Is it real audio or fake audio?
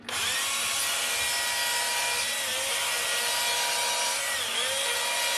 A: real